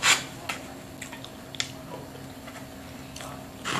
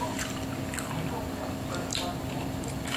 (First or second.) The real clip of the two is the first